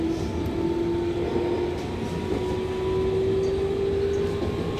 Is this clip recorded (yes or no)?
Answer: yes